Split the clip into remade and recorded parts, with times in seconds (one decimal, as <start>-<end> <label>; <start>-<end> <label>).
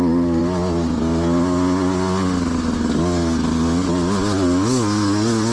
0.0-5.5 recorded